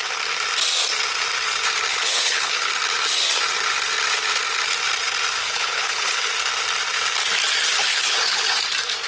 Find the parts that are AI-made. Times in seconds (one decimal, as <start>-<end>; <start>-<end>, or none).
1.9-2.7; 5.4-6.3; 7.8-8.5